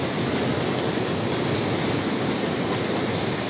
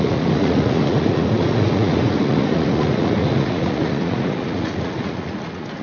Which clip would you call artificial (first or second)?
second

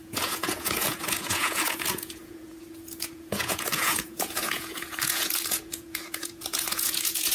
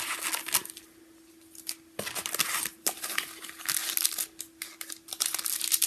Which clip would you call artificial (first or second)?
first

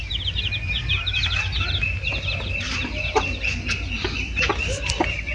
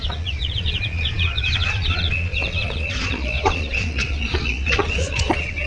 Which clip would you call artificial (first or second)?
second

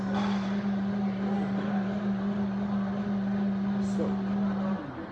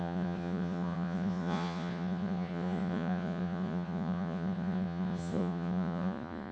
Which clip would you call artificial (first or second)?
second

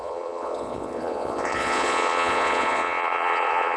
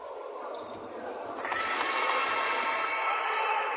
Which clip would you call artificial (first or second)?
first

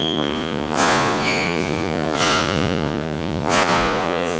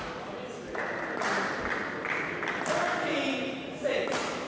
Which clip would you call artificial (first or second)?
first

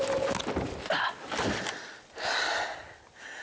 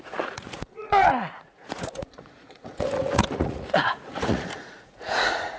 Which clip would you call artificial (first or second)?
second